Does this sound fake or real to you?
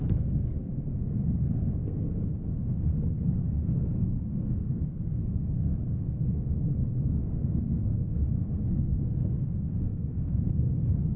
fake